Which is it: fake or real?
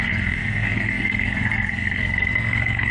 fake